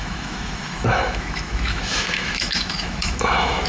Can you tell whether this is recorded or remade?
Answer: remade